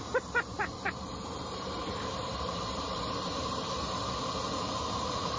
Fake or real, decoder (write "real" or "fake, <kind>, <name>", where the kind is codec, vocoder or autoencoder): fake, vocoder, BigVGAN v2